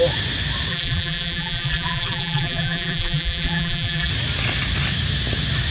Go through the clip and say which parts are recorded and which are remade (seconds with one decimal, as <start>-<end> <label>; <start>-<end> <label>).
0.0-0.7 recorded; 0.7-4.1 remade; 4.1-5.7 recorded